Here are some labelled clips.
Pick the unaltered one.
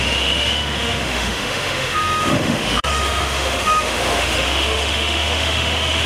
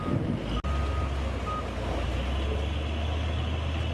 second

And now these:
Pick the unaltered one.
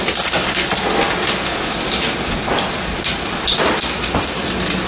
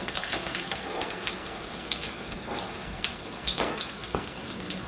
first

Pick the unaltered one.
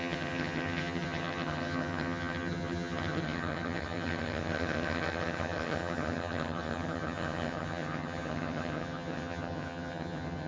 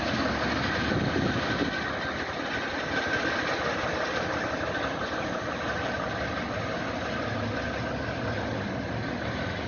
second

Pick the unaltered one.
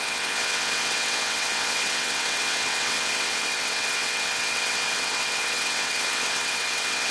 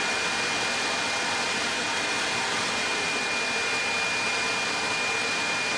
second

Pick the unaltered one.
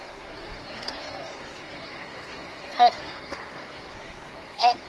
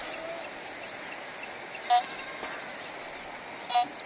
second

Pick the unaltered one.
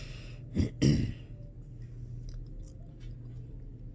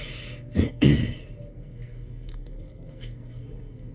first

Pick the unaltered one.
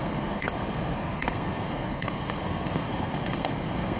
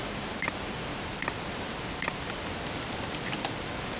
second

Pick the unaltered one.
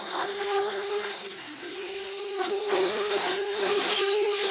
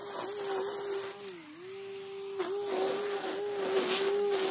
second